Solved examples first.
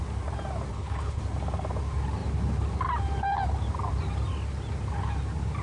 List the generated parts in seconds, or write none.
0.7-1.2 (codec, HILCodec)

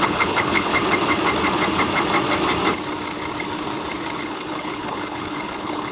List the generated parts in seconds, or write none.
0.0-0.7 (codec, HILCodec); 4.2-5.9

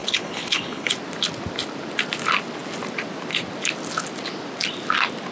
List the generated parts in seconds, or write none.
0.0-0.9 (codec, HILCodec)